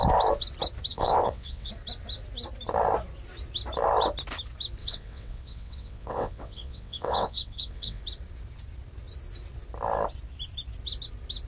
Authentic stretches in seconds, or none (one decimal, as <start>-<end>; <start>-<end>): 0.0-0.9; 1.7-4.8; 8.0-11.5